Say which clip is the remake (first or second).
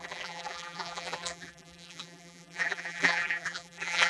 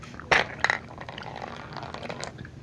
first